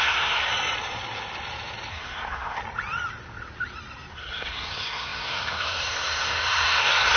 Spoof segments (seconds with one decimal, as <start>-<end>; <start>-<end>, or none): 0.0-0.5; 1.9-2.6; 4.1-7.2

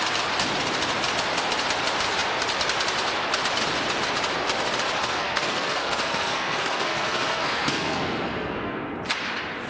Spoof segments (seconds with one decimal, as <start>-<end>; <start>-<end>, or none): 5.0-9.0

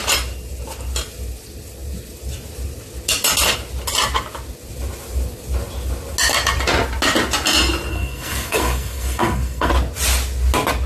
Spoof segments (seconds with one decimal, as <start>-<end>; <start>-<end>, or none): 7.9-9.7